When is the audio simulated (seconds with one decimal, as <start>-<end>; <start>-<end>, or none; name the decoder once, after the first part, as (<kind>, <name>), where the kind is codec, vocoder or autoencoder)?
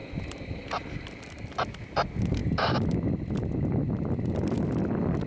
none